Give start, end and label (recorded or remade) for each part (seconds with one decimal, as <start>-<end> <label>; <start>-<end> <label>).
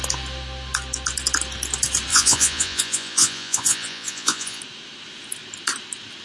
0.0-2.1 recorded; 2.1-4.6 remade; 4.6-6.2 recorded